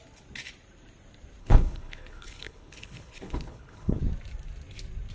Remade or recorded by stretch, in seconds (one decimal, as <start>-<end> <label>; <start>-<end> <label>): 0.0-1.4 recorded; 1.4-4.0 remade; 4.0-5.1 recorded